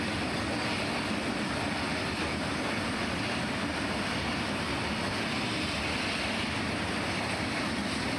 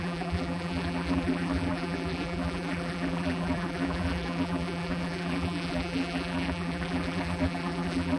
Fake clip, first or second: second